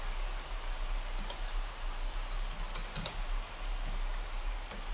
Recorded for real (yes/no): yes